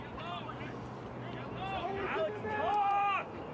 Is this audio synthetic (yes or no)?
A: yes